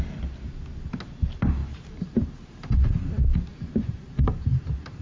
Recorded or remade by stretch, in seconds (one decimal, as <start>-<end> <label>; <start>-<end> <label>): 0.0-1.6 recorded; 1.6-3.1 remade; 3.1-3.5 recorded; 3.5-5.0 remade